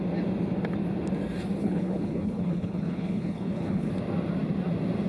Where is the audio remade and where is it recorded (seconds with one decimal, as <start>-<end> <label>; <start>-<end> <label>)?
0.0-1.6 recorded; 1.6-3.9 remade; 3.9-5.1 recorded